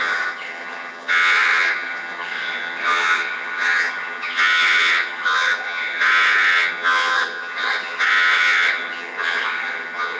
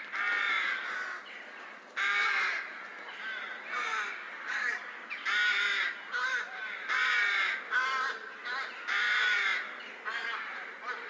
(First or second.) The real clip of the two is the second